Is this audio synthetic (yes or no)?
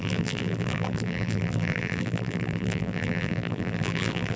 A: yes